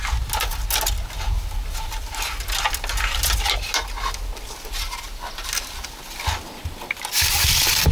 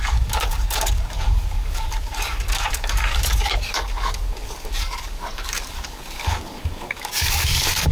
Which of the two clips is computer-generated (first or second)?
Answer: second